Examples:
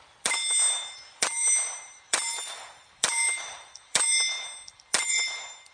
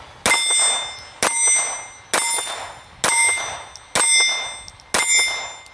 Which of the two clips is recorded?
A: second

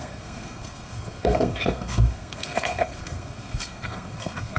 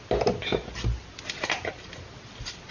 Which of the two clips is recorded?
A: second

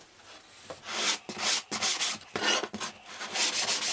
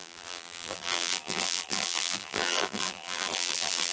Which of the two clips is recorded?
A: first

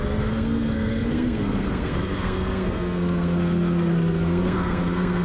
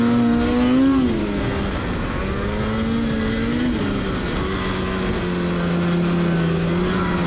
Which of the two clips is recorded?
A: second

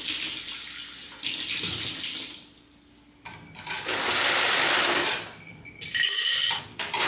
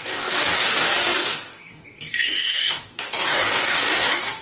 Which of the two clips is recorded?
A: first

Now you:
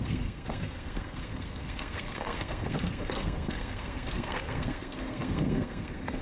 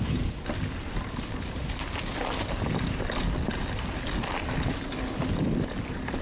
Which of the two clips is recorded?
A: second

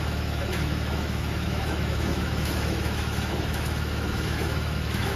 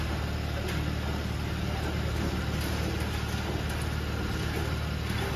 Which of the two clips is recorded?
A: second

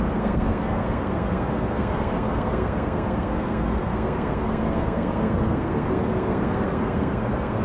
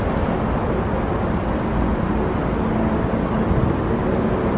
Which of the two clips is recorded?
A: second